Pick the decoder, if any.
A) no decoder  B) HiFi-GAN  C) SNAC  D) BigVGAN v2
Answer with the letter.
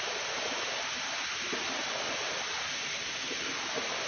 A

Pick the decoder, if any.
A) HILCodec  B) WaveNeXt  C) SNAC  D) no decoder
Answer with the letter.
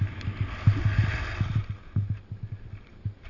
D